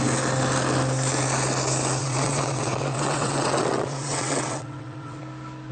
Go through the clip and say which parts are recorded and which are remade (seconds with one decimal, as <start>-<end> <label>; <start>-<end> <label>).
0.0-2.0 recorded; 2.0-5.2 remade; 5.2-5.7 recorded